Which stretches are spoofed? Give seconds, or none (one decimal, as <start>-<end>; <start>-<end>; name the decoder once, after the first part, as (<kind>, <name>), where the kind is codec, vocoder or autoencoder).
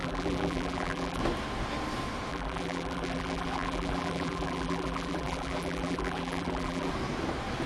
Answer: 0.0-1.2 (vocoder, BigVGAN v2); 2.3-6.9